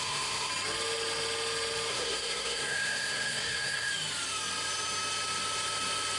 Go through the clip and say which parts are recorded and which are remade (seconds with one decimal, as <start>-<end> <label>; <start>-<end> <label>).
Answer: 0.0-0.5 remade; 0.5-1.9 recorded; 1.9-3.9 remade; 3.9-6.2 recorded